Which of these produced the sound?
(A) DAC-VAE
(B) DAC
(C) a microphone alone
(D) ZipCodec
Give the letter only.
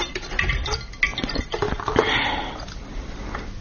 C